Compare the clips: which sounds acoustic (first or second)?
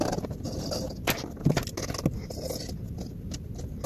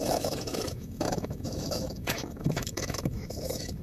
first